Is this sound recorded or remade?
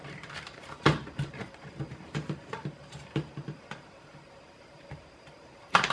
remade